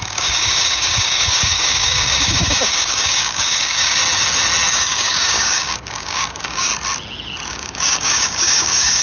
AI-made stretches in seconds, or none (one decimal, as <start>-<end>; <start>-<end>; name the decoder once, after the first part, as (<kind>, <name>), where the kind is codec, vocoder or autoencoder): 0.0-4.0 (codec, DAC); 4.7-6.7; 7.5-9.0